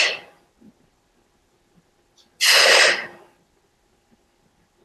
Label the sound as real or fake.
real